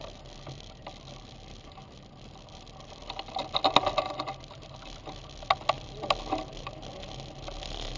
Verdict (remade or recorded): recorded